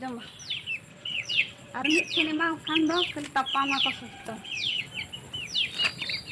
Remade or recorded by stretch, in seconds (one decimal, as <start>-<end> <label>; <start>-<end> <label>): 0.0-0.9 recorded; 0.9-3.1 remade; 3.1-3.5 recorded; 3.5-4.9 remade; 4.9-6.3 recorded

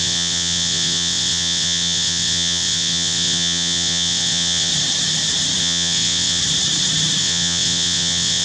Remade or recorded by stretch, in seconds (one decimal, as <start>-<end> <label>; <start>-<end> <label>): 0.0-4.7 remade; 4.7-5.6 recorded; 5.6-6.4 remade; 6.4-7.2 recorded; 7.2-8.4 remade

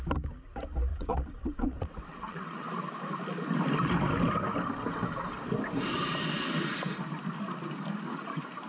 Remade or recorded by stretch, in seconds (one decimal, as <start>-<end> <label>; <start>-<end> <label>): 0.0-0.9 recorded; 0.9-2.7 remade; 2.7-8.7 recorded

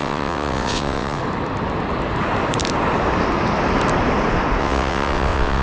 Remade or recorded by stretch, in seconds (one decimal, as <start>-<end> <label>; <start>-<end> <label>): 0.0-1.2 remade; 1.2-4.6 recorded; 4.6-5.6 remade

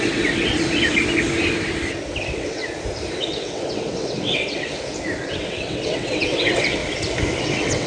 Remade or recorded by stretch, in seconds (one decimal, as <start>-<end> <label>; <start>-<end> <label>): 0.0-0.5 remade; 0.5-2.2 recorded; 2.2-2.6 remade; 2.6-3.2 recorded; 3.2-4.7 remade; 4.7-5.2 recorded; 5.2-6.8 remade; 6.8-7.4 recorded; 7.4-7.9 remade

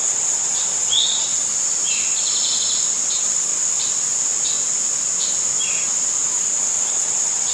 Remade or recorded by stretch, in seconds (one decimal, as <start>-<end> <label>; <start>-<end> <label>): 0.0-1.5 remade; 1.5-3.1 recorded; 3.1-3.5 remade; 3.5-6.9 recorded; 6.9-7.5 remade

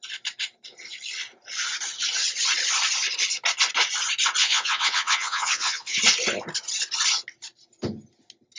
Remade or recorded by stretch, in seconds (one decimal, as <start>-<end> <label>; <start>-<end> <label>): 0.0-4.4 recorded; 4.4-6.0 remade; 6.0-8.6 recorded